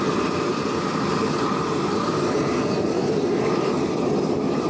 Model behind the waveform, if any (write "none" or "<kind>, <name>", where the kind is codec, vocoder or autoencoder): vocoder, BigVGAN v2